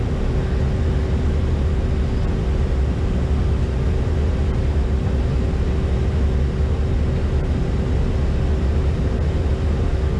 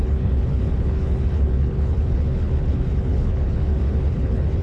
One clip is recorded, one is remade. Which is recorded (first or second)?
first